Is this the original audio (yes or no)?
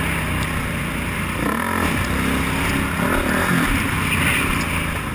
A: yes